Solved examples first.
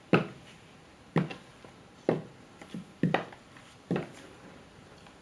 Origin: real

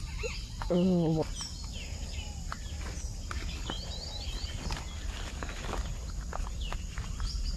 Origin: real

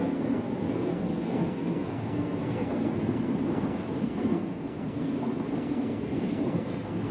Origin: fake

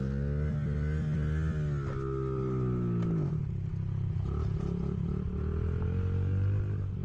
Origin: real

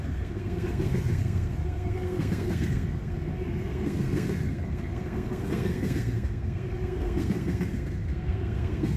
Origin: fake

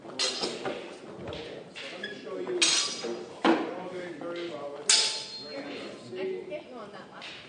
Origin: real